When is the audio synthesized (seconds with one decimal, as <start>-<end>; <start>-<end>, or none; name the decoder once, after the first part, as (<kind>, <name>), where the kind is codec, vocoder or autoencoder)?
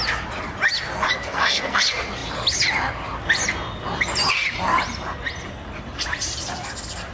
1.2-1.8 (codec, SNAC)